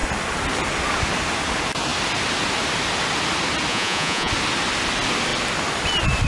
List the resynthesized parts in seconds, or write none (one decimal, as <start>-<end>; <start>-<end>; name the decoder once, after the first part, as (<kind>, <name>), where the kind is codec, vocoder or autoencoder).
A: 3.7-4.3 (vocoder, Vocos)